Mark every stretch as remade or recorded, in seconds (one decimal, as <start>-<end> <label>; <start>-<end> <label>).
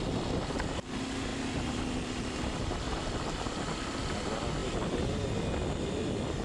0.0-6.4 recorded